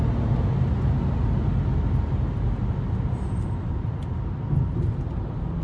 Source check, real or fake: real